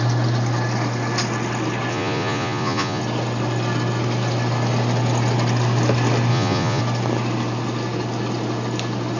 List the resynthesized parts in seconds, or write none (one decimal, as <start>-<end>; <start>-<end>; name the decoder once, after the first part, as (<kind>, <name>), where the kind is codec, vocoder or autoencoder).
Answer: 1.9-3.0 (vocoder, Vocos); 6.3-6.8